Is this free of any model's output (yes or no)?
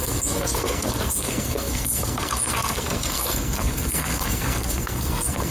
no